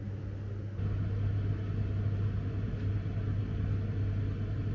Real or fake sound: real